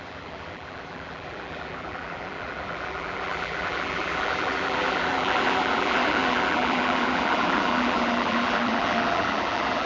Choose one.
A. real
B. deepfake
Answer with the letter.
B